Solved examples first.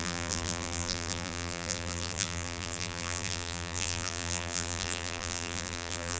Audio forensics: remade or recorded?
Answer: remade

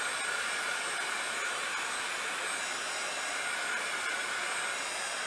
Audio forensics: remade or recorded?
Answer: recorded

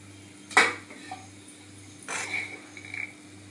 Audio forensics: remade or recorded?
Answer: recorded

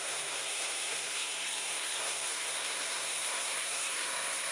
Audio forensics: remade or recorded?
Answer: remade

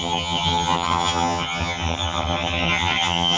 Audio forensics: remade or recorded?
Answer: remade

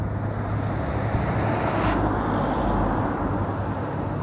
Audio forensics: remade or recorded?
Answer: recorded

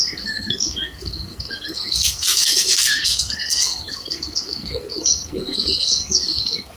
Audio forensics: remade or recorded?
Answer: remade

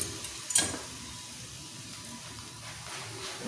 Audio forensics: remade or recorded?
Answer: recorded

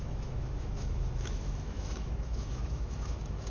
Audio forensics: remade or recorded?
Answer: remade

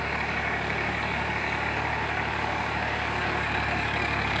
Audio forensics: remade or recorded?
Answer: remade